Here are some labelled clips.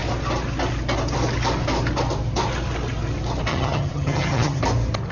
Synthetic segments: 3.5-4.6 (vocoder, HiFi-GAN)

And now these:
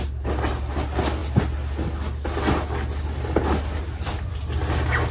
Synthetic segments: none

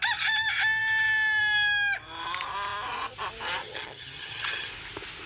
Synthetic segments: 3.6-4.7 (vocoder, HiFi-GAN)